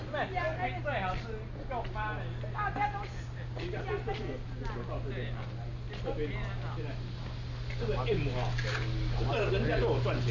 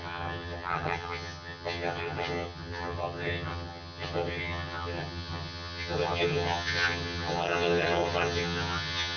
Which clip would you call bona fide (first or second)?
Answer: first